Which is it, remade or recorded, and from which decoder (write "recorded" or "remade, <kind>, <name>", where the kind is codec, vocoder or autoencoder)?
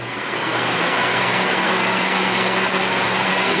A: remade, codec, SNAC